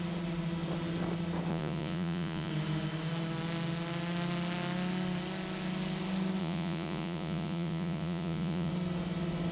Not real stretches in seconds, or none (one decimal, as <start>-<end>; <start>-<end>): 1.5-2.5; 6.4-8.7

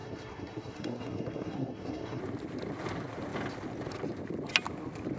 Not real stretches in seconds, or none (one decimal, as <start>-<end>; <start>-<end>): 0.0-2.2